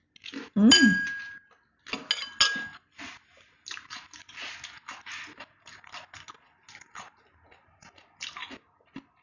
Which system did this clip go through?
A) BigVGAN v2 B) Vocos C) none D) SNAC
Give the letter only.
C